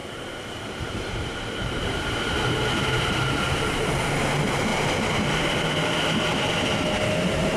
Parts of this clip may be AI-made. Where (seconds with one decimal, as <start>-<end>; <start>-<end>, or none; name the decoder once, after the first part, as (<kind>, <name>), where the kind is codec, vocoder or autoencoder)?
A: 0.0-3.9 (vocoder, BigVGAN v2); 4.7-5.5